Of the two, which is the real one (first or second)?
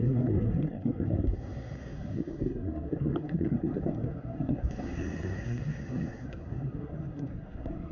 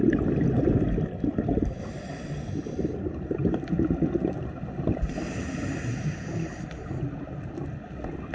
second